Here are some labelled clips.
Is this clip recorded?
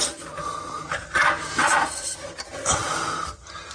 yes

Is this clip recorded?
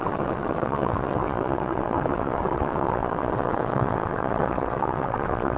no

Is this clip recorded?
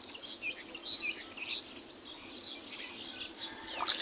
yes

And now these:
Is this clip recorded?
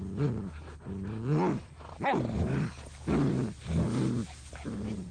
yes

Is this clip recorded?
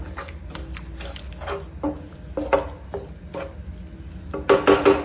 yes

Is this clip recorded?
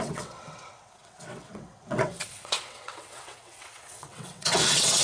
no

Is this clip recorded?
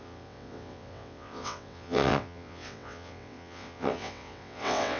no